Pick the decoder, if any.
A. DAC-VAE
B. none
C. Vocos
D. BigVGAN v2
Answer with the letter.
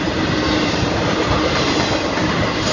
D